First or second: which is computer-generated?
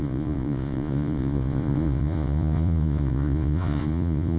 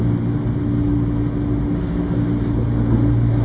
first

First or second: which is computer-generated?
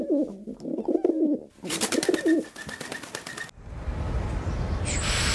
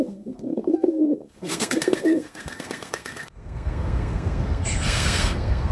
second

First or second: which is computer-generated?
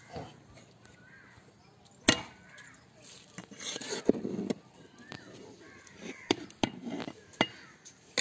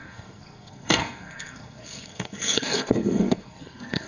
second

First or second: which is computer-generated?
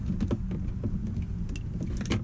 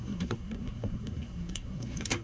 second